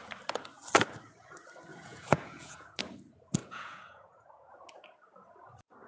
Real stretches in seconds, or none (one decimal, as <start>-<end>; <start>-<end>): 0.0-1.7; 2.8-3.4; 4.5-5.9